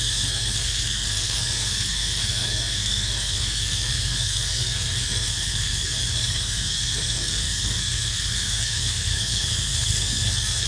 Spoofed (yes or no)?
yes